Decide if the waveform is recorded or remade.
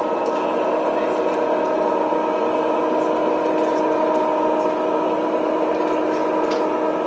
recorded